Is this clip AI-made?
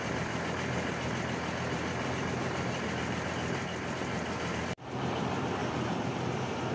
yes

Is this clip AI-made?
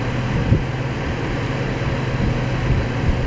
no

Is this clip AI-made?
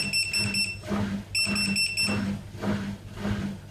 no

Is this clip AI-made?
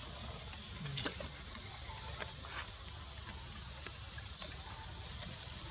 no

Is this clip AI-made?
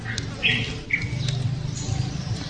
no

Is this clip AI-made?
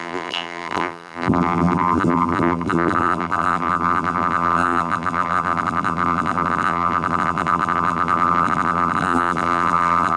yes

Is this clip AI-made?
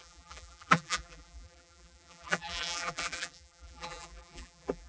yes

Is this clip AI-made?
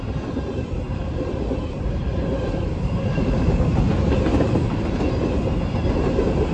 yes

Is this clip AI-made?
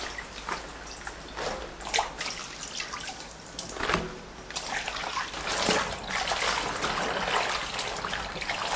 no